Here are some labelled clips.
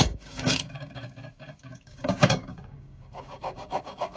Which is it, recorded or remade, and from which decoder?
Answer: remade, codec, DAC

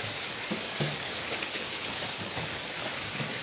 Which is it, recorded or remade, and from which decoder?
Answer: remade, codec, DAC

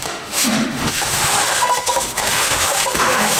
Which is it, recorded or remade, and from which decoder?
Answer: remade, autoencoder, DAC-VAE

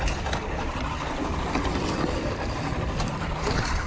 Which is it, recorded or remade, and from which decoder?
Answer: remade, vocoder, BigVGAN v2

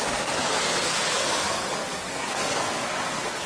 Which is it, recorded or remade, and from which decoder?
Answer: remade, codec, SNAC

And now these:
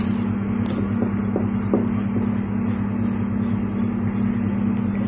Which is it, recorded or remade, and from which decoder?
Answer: recorded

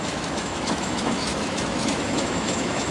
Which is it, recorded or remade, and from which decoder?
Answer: remade, autoencoder, DAC-VAE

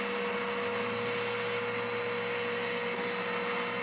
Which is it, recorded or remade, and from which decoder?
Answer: recorded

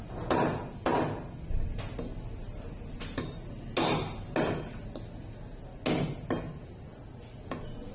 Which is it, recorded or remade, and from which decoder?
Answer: recorded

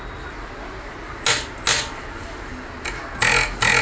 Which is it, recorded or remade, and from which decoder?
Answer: recorded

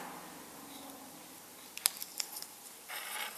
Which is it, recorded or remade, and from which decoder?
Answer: recorded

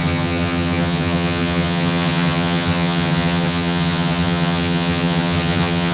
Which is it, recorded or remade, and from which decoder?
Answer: remade, vocoder, HiFi-GAN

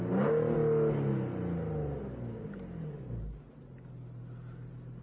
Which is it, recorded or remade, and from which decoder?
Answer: recorded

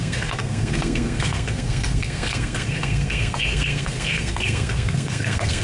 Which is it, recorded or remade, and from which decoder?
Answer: remade, codec, SNAC